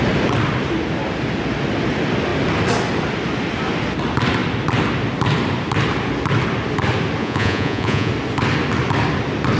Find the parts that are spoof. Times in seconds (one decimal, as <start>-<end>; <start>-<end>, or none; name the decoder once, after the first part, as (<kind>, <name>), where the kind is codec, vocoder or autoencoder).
7.2-8.1 (vocoder, Vocos)